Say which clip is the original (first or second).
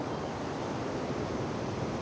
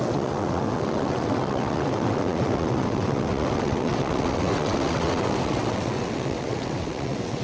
first